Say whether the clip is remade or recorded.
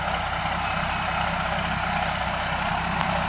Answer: recorded